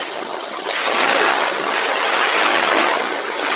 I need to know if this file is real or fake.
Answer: fake